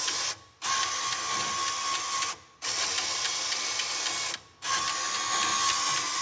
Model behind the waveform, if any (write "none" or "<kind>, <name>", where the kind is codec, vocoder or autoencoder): none